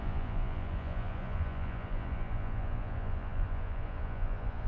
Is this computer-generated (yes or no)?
yes